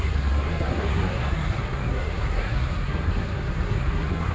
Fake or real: fake